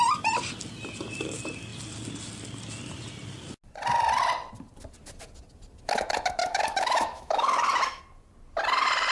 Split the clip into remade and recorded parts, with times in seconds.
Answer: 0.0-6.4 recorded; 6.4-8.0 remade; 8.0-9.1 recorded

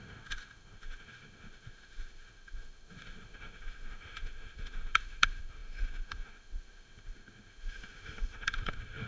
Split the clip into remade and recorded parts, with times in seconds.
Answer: 0.0-9.1 remade

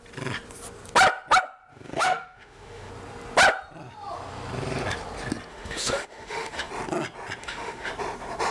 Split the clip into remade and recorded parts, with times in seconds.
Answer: 0.0-1.7 recorded; 1.7-2.9 remade; 2.9-5.5 recorded; 5.5-6.7 remade; 6.7-7.4 recorded; 7.4-7.9 remade; 7.9-8.5 recorded

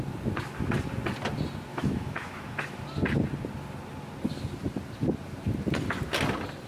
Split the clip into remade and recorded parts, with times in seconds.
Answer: 0.0-1.7 recorded; 1.7-2.8 remade; 2.8-6.7 recorded